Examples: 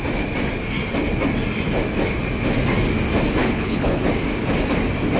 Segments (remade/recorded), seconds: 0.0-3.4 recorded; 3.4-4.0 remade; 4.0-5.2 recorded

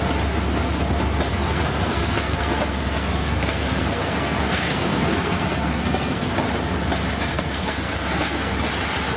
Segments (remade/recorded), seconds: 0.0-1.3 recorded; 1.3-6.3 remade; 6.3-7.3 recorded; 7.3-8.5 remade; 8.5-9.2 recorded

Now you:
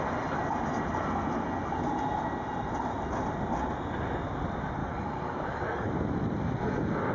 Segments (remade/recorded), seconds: 0.0-4.8 recorded; 4.8-5.9 remade; 5.9-7.1 recorded

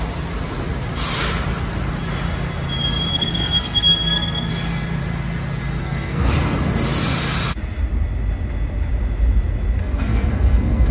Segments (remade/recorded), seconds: 0.0-3.1 recorded; 3.1-4.5 remade; 4.5-5.8 recorded; 5.8-6.3 remade; 6.3-9.8 recorded; 9.8-10.9 remade

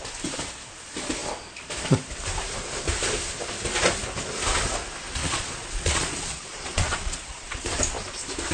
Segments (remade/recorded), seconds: 0.0-5.2 recorded; 5.2-7.8 remade; 7.8-8.5 recorded

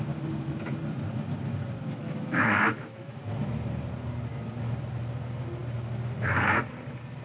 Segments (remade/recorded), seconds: 0.0-2.0 recorded; 2.0-3.1 remade; 3.1-7.2 recorded

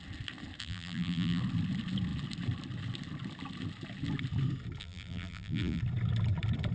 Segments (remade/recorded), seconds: 0.0-0.6 recorded; 0.6-1.4 remade; 1.4-4.8 recorded; 4.8-5.8 remade; 5.8-6.7 recorded

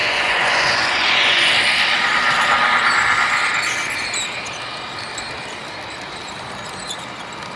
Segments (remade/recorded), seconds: 0.0-1.5 remade; 1.5-7.6 recorded